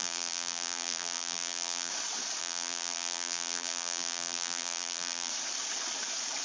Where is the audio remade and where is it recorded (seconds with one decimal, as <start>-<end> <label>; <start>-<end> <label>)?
0.0-1.9 remade; 1.9-2.4 recorded; 2.4-5.3 remade; 5.3-6.4 recorded